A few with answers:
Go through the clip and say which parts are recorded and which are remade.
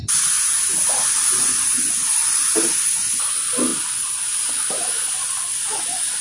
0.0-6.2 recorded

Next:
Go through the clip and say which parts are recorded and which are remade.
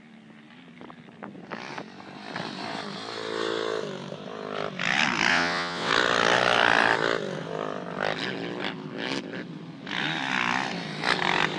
0.0-5.3 recorded; 5.3-5.9 remade; 5.9-11.6 recorded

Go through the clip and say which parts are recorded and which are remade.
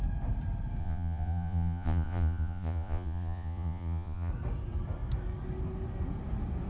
0.0-0.8 recorded; 0.8-4.3 remade; 4.3-6.7 recorded